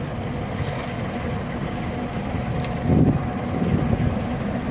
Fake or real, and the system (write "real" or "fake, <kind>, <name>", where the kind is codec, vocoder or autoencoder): real